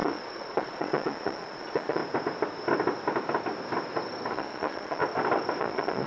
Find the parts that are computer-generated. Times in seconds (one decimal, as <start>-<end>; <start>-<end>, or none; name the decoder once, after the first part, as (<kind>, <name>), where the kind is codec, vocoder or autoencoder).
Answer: 0.0-2.0 (vocoder, Vocos); 4.3-5.0; 5.6-6.1